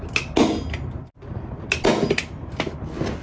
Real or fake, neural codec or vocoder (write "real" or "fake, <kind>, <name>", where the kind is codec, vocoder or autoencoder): real